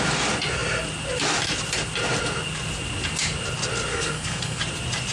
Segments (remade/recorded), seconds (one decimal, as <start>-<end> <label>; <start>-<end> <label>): 0.0-3.9 recorded; 3.9-4.6 remade; 4.6-5.1 recorded